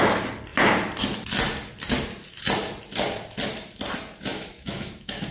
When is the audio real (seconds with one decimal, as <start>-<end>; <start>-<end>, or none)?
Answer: 0.0-4.3